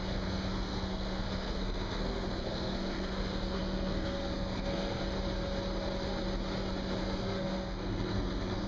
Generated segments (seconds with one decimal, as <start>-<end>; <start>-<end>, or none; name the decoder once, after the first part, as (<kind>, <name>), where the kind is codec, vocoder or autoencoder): 0.0-5.0 (codec, SNAC); 7.0-8.7